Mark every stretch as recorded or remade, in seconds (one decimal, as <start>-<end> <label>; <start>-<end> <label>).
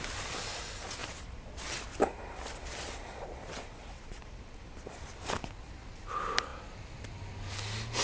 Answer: 0.0-1.0 recorded; 1.0-5.8 remade; 5.8-8.0 recorded